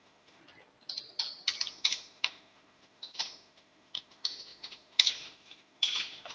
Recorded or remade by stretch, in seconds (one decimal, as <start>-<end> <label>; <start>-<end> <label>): 0.0-0.4 remade; 0.4-1.7 recorded; 1.7-6.3 remade